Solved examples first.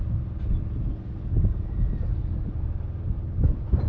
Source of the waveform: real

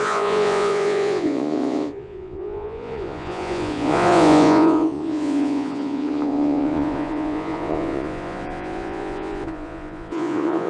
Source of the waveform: fake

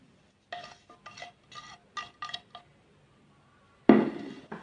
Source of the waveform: real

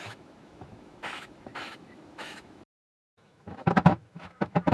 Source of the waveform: fake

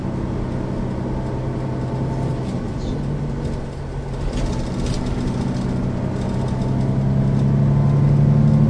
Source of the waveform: real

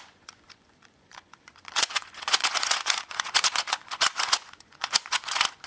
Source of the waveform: fake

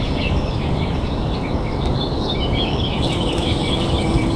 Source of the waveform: fake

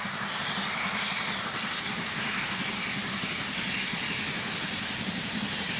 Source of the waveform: real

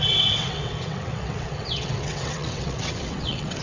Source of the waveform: fake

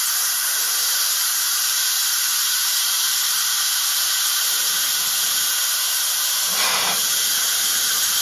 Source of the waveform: fake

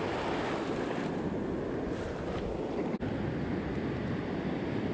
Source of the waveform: real